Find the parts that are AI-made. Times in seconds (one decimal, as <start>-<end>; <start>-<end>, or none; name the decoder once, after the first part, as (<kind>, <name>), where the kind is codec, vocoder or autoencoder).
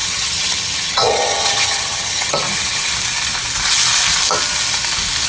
0.0-2.9 (vocoder, HiFi-GAN)